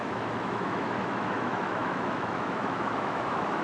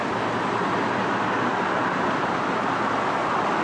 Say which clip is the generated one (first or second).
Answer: first